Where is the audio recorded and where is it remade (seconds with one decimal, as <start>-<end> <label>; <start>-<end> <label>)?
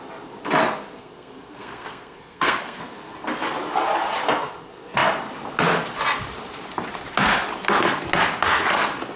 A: 0.0-1.0 recorded; 1.0-2.8 remade; 2.8-9.2 recorded